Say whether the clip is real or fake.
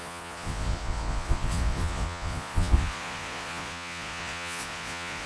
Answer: fake